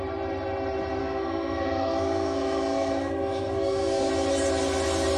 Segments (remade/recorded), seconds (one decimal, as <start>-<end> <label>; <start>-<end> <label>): 0.0-1.0 recorded; 1.0-4.1 remade; 4.1-5.2 recorded